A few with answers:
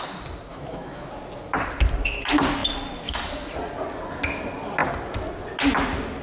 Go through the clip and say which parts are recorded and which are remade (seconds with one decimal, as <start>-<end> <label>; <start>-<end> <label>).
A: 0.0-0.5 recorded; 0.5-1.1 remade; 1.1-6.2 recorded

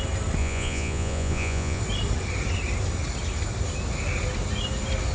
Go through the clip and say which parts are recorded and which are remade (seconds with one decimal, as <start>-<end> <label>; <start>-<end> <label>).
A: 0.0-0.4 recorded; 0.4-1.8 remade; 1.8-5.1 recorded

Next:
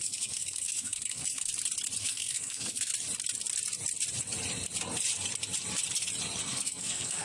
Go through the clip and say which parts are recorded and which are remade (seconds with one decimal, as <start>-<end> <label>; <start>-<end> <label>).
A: 0.0-1.5 remade; 1.5-2.0 recorded; 2.0-2.9 remade; 2.9-6.4 recorded; 6.4-7.2 remade